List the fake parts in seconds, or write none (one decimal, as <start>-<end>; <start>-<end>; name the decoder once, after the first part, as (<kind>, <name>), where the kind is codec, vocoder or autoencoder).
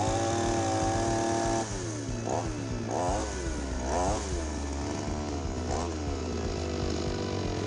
none